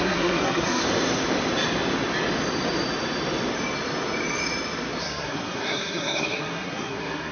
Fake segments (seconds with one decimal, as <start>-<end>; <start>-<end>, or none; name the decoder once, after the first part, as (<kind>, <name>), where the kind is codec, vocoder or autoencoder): 0.0-0.8 (codec, SNAC); 5.0-7.3

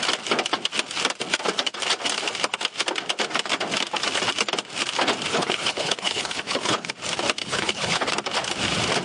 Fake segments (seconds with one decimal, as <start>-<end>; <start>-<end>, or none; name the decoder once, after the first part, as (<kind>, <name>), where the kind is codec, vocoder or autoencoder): 5.3-6.9 (codec, HILCodec); 7.4-8.1

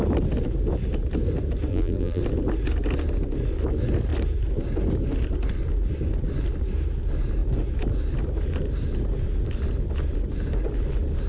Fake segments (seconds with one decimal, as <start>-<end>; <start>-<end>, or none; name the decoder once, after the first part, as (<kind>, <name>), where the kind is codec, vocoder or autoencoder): 1.7-2.2 (vocoder, BigVGAN v2)